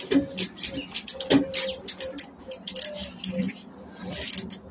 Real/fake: real